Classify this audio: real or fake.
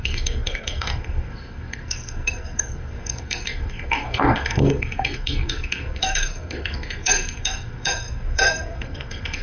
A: fake